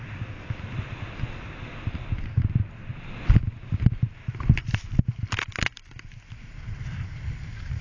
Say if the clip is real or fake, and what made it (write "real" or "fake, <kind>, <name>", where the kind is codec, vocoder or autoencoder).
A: real